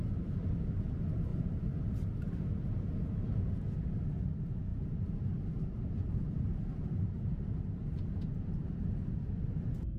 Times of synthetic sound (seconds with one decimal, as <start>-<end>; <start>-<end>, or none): 4.7-9.1